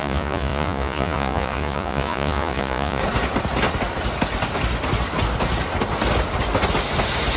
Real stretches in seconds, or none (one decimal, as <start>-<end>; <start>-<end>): 3.0-7.4